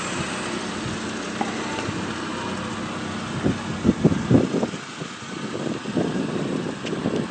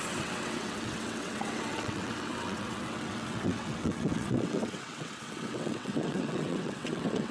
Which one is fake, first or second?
second